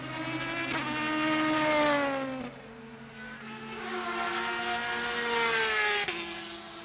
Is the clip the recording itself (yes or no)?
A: yes